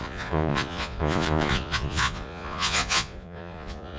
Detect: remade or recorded remade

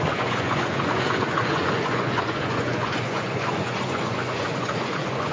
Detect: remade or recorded remade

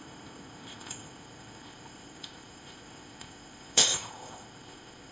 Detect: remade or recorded remade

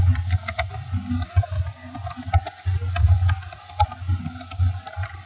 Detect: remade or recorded recorded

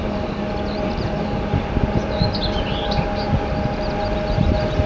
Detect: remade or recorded recorded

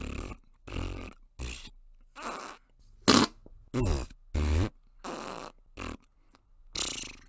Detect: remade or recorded recorded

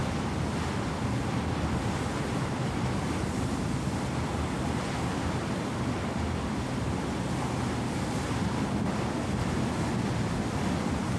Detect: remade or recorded recorded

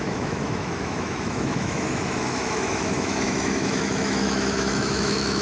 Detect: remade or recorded remade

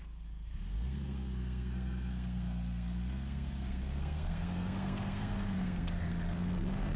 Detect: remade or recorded remade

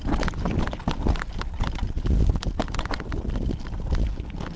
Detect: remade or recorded recorded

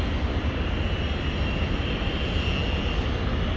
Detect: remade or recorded recorded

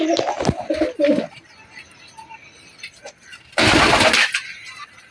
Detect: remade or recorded recorded